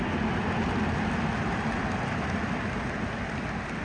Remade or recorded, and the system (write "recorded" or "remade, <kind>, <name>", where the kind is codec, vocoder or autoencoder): recorded